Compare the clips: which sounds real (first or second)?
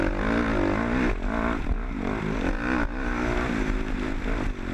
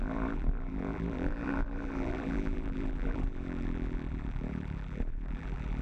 first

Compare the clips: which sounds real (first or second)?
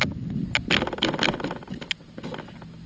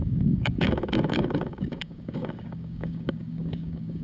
first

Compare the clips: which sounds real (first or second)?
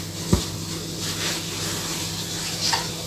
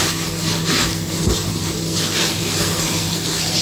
first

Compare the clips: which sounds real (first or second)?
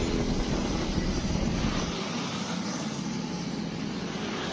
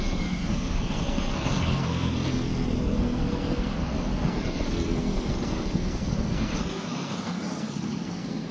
first